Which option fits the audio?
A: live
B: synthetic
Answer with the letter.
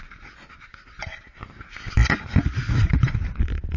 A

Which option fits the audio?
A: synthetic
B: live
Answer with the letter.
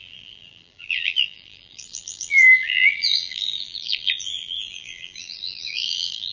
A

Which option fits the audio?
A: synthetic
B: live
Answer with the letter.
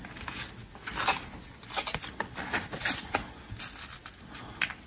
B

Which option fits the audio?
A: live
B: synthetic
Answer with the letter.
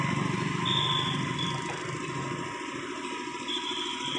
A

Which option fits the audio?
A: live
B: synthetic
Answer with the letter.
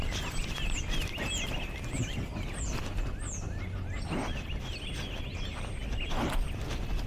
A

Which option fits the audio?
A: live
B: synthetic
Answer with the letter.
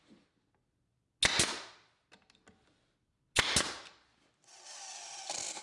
A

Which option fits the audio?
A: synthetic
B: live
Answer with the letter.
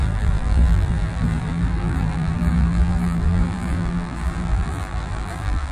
A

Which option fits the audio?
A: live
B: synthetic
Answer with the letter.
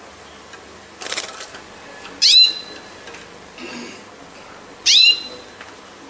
A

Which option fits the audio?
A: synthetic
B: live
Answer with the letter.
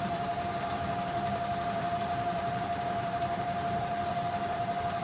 A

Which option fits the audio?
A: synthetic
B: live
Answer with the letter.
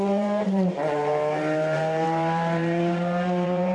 A